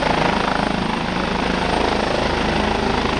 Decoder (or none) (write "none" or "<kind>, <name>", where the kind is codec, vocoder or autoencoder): none